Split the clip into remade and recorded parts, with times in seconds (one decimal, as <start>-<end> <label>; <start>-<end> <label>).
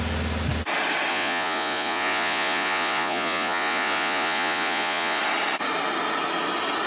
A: 0.0-1.1 recorded; 1.1-5.2 remade; 5.2-6.9 recorded